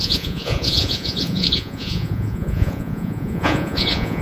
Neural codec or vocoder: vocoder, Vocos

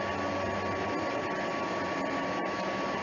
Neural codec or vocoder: none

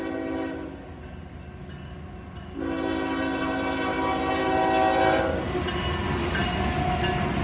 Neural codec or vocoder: none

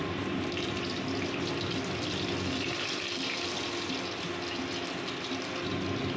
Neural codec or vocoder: none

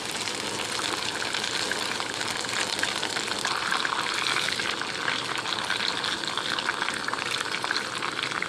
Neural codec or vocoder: none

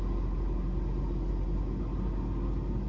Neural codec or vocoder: none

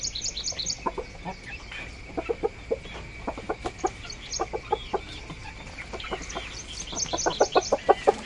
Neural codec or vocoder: none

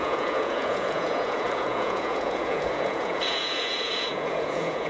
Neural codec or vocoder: vocoder, Vocos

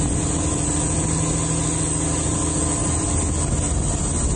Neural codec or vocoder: none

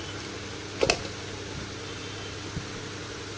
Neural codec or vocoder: none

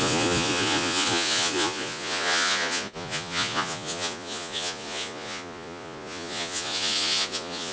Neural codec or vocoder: vocoder, Vocos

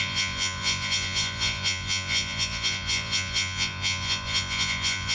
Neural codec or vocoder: vocoder, Vocos